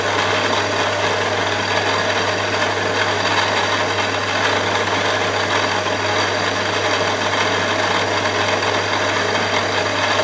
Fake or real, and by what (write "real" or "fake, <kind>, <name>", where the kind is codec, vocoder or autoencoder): real